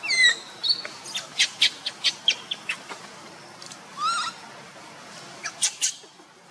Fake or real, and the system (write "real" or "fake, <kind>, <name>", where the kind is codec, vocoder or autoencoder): real